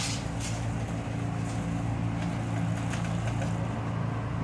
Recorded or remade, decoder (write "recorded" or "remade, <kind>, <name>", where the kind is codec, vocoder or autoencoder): recorded